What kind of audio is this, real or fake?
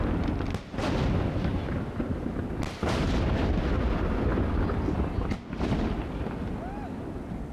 real